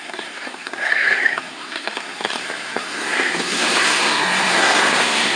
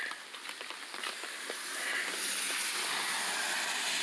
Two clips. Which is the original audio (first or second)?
second